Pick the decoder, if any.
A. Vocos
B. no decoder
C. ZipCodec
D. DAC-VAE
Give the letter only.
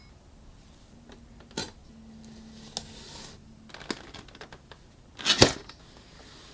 B